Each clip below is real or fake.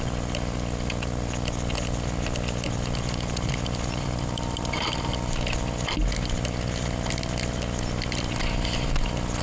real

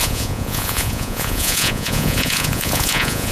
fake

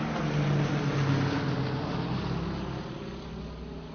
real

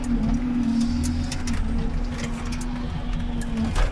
real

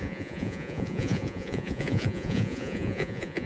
fake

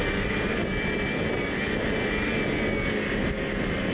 real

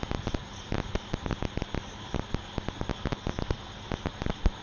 real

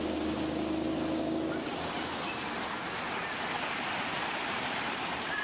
real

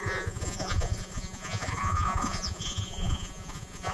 fake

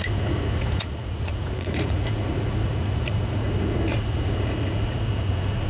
fake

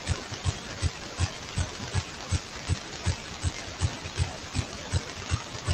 real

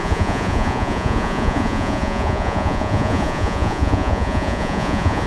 fake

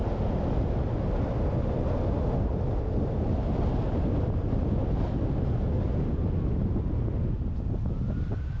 real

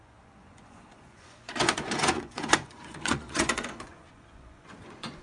fake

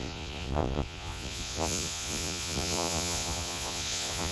fake